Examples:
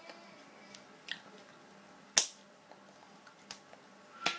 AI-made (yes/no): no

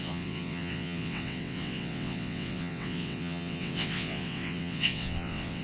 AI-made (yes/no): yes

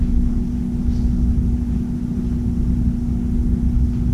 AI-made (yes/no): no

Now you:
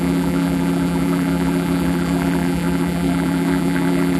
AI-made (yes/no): yes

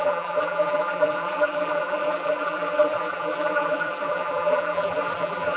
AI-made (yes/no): yes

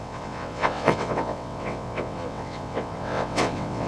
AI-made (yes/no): yes